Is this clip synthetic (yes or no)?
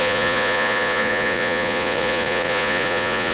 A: yes